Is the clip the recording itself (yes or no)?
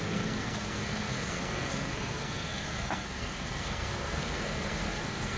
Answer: no